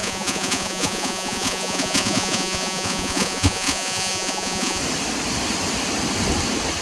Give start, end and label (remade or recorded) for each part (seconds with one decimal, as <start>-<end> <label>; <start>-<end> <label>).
0.0-4.8 remade; 4.8-6.8 recorded